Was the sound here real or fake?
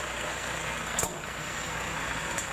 fake